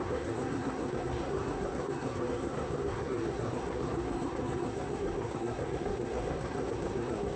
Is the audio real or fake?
fake